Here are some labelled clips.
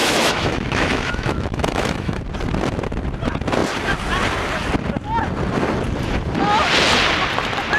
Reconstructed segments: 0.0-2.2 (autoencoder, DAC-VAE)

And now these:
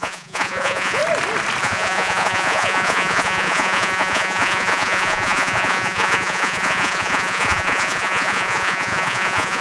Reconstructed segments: 0.0-1.0 (vocoder, Vocos); 1.6-9.6

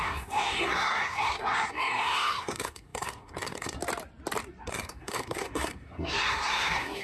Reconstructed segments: 0.0-3.8 (codec, SNAC); 4.6-7.0

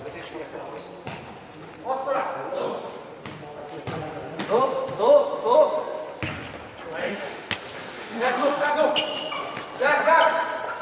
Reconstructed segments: 7.0-7.5 (autoencoder, DAC-VAE); 8.0-8.7

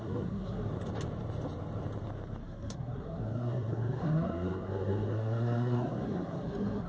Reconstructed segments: 0.0-0.7 (codec, SNAC); 2.4-6.9

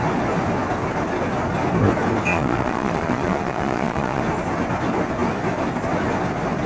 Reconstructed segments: 2.3-4.2 (vocoder, Vocos)

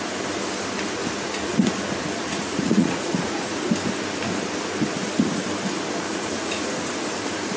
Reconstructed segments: 2.3-3.6 (vocoder, Vocos); 6.1-6.9